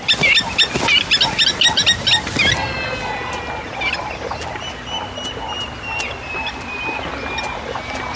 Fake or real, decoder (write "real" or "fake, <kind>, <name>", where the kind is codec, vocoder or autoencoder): real